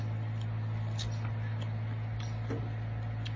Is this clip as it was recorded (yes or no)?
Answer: yes